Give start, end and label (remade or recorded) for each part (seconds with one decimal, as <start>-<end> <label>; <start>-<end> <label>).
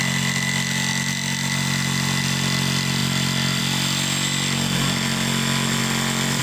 0.0-5.8 recorded; 5.8-6.4 remade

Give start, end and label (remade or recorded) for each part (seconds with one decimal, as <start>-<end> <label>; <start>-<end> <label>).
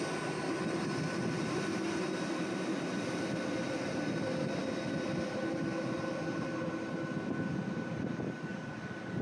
0.0-8.5 recorded; 8.5-9.2 remade